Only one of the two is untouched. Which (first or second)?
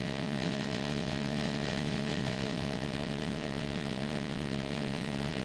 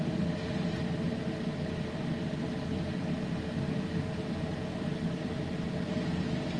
second